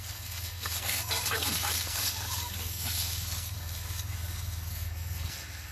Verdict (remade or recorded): remade